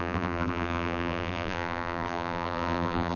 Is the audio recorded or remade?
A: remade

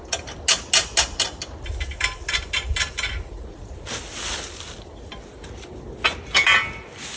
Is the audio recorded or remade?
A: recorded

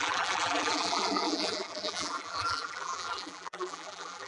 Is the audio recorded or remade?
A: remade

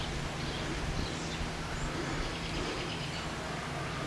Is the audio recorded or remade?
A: recorded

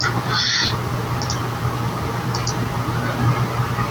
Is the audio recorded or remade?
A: recorded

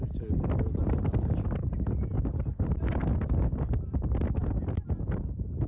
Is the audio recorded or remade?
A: remade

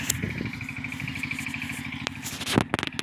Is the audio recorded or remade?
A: recorded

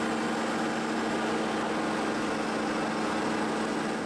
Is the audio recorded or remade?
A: recorded